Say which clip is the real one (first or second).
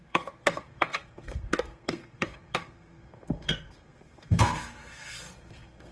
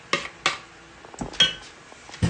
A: second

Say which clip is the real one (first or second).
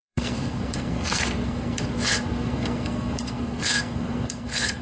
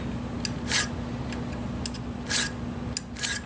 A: second